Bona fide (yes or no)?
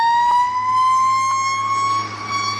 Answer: yes